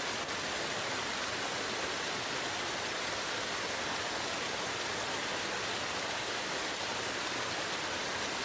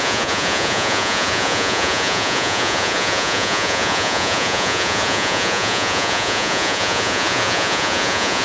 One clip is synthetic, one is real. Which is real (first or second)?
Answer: first